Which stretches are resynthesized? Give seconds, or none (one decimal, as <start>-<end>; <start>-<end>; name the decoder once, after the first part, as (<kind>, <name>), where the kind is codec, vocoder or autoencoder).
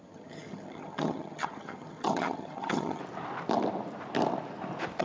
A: 0.0-3.0 (vocoder, HiFi-GAN)